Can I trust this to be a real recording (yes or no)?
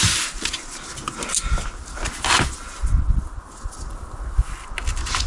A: yes